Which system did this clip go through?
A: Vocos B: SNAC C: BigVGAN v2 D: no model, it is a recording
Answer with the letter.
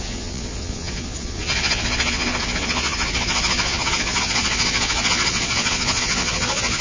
A